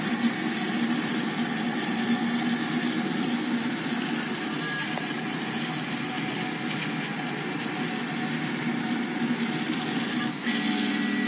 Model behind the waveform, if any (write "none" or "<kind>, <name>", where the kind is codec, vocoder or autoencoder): none